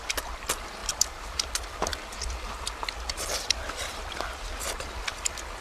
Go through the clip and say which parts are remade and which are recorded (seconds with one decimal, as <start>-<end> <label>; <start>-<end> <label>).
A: 0.0-0.8 recorded; 0.8-1.5 remade; 1.5-5.6 recorded